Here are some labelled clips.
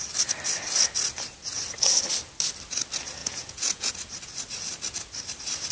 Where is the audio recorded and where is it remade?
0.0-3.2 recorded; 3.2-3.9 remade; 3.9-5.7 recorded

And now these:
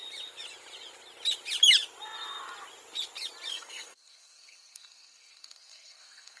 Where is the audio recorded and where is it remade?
0.0-3.5 recorded; 3.5-6.4 remade